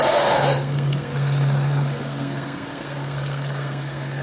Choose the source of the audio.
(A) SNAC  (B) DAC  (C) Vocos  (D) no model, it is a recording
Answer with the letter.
A